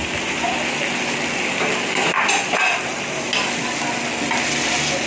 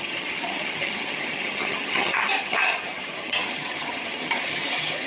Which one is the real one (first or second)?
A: first